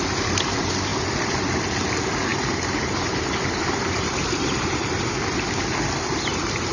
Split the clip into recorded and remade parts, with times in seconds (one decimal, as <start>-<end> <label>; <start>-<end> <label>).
0.0-0.9 recorded; 0.9-1.9 remade; 1.9-2.3 recorded; 2.3-5.1 remade; 5.1-6.7 recorded